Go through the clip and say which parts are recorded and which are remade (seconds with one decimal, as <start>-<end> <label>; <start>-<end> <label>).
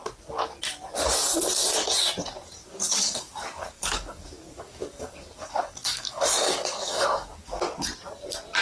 0.0-2.6 recorded; 2.6-7.6 remade; 7.6-8.6 recorded